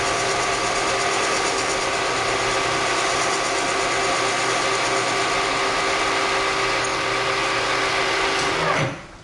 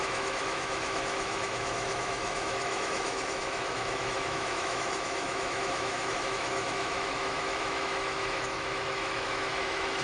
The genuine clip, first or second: first